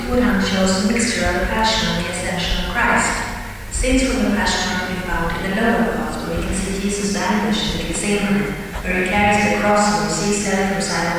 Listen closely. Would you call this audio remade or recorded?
recorded